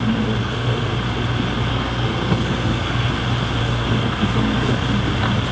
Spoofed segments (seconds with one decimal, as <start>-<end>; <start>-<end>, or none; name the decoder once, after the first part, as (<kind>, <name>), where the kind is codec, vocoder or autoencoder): 0.4-0.9 (codec, SNAC); 1.7-3.1; 3.6-4.7